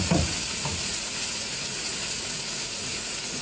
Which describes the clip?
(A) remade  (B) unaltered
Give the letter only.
A